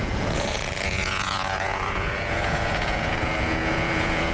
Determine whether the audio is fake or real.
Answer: fake